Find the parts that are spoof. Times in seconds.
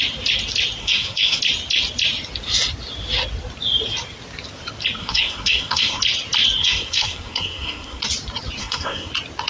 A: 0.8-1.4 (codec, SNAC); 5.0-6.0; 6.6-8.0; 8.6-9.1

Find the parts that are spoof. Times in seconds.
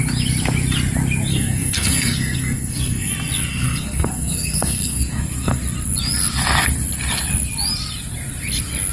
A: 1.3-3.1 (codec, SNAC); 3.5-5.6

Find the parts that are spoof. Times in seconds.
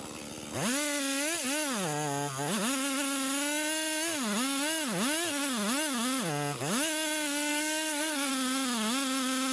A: 7.5-8.3 (codec, SNAC)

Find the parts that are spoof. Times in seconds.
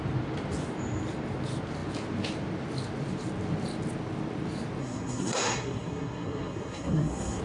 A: 4.8-7.4 (codec, SNAC)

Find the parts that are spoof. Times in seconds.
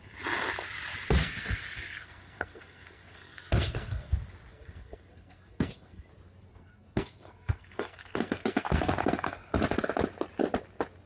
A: 1.2-4.1 (codec, SNAC); 4.5-6.1; 6.5-9.5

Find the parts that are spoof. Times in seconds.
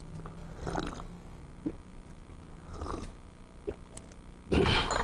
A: none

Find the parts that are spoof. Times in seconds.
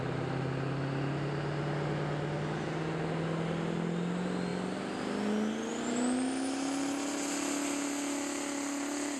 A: none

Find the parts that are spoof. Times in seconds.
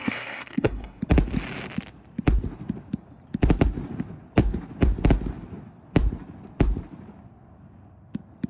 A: 0.0-1.0 (codec, SNAC)